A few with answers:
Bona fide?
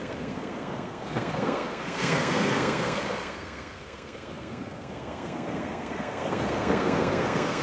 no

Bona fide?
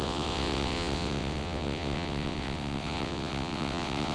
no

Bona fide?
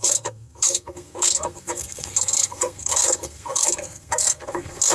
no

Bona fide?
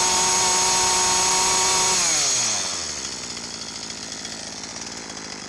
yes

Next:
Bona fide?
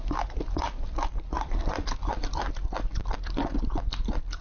yes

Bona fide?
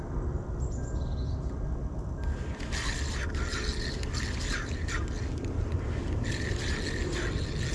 yes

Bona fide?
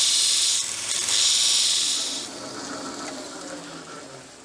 yes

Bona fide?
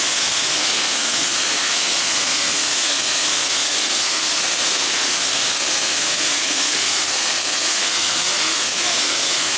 no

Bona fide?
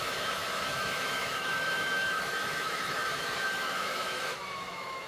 no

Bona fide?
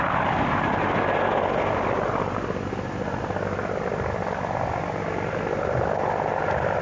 yes